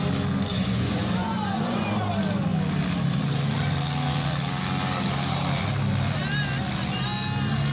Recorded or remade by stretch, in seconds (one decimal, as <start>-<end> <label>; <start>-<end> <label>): 0.0-0.5 recorded; 0.5-1.8 remade; 1.8-7.7 recorded